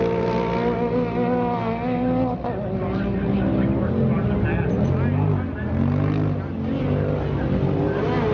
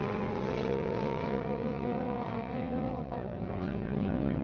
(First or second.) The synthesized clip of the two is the second